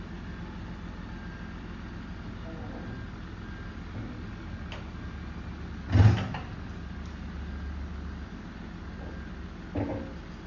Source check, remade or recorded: recorded